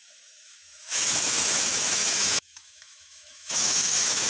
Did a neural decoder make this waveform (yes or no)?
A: yes